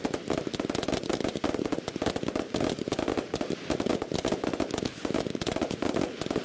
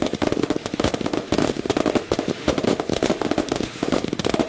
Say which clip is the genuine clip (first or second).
first